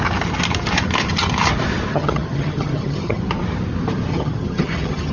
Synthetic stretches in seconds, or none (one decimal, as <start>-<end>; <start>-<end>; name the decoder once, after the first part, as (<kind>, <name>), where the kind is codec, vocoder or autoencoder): 1.9-3.2 (vocoder, HiFi-GAN); 4.1-5.1